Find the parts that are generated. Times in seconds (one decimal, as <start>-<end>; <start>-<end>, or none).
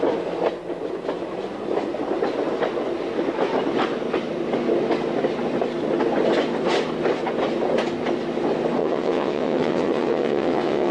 8.8-10.9